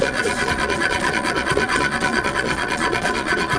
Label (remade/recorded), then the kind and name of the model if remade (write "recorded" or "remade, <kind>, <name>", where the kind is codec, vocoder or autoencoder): remade, vocoder, Vocos